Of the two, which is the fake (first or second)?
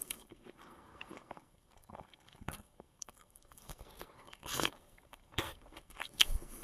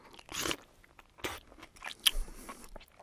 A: first